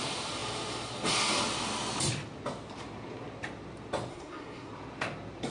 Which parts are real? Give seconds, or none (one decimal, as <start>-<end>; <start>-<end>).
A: 0.0-4.1; 4.7-5.5